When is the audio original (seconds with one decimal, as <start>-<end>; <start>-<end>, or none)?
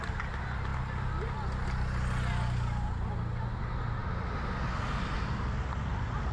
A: 0.0-6.3